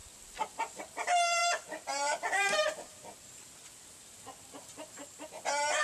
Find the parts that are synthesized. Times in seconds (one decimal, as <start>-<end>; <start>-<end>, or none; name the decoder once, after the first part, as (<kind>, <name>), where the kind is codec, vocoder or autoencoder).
1.4-3.3 (vocoder, BigVGAN v2)